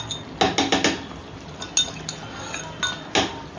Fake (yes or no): no